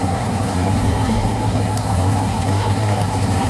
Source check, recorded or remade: remade